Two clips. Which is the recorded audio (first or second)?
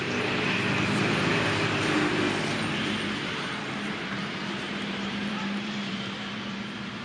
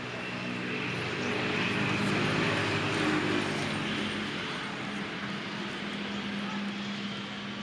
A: second